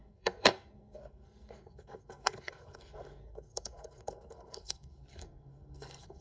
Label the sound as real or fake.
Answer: fake